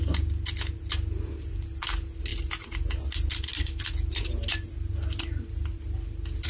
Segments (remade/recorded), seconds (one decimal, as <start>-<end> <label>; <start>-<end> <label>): 0.0-6.5 recorded